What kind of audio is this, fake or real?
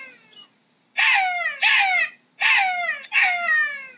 real